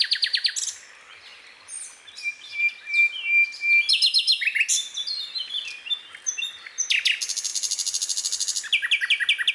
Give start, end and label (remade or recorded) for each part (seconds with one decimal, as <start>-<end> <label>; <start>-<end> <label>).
0.0-9.5 recorded

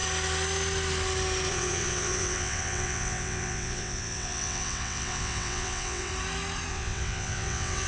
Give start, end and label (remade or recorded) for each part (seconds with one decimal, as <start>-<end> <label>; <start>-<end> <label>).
0.0-1.5 recorded; 1.5-6.1 remade; 6.1-6.7 recorded; 6.7-7.9 remade